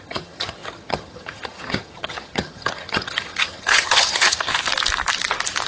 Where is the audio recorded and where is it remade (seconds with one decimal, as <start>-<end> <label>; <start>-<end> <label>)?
0.0-4.5 remade; 4.5-5.7 recorded

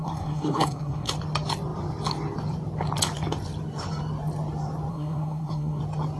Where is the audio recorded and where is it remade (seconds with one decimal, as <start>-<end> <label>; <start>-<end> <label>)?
0.0-1.1 remade; 1.1-4.9 recorded; 4.9-5.8 remade; 5.8-6.2 recorded

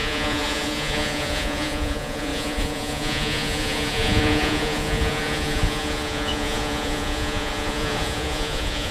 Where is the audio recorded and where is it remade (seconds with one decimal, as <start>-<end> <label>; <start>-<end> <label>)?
0.0-8.9 remade

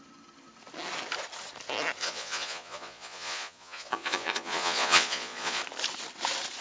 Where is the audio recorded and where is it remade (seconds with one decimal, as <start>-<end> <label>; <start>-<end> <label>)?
0.0-2.0 recorded; 2.0-5.6 remade; 5.6-6.6 recorded

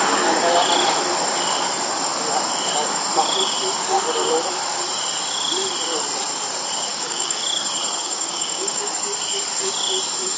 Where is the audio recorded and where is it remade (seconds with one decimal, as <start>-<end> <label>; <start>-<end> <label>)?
0.0-6.9 recorded; 6.9-7.4 remade; 7.4-8.0 recorded; 8.0-8.9 remade; 8.9-10.4 recorded